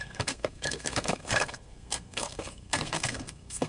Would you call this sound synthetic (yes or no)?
yes